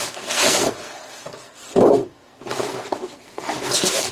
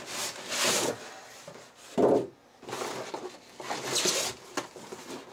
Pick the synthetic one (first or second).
first